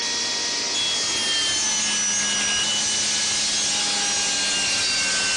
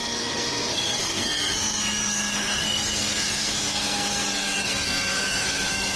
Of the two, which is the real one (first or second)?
first